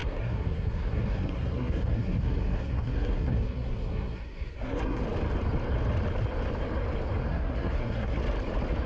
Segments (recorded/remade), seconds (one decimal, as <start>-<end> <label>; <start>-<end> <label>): 0.0-5.0 remade; 5.0-7.3 recorded; 7.3-8.2 remade; 8.2-8.9 recorded